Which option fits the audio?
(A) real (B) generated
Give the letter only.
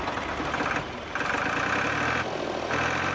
A